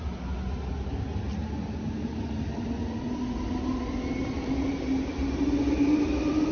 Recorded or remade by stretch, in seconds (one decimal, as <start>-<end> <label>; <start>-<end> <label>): 0.0-1.4 recorded; 1.4-2.2 remade; 2.2-6.5 recorded